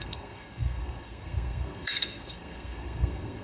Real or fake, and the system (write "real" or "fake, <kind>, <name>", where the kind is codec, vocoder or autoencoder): fake, codec, SNAC